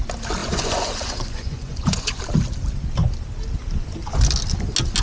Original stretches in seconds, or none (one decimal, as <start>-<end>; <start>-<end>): 0.0-0.4; 2.2-5.0